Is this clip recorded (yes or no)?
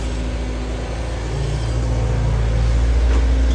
yes